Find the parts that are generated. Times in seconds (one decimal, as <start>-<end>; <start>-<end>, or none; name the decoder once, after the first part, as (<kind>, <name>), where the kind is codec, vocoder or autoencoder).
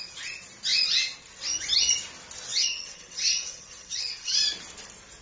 2.5-4.4 (vocoder, WaveNeXt)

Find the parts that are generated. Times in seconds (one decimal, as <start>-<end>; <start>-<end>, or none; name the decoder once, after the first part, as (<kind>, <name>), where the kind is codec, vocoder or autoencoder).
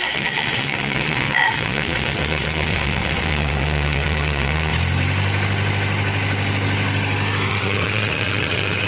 0.0-4.7 (vocoder, WaveNeXt); 7.5-8.9